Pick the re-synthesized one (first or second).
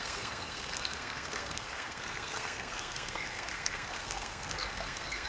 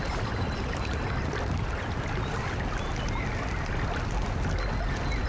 first